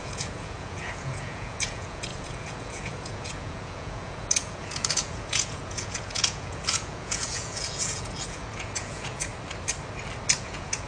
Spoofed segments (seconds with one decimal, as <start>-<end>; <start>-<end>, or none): 0.0-9.3; 10.4-10.9